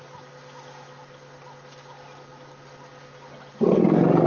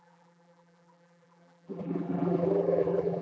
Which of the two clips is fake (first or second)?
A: second